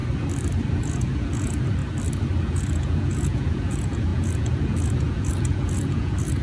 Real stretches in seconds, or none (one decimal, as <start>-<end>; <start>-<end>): 0.0-0.7; 1.8-2.4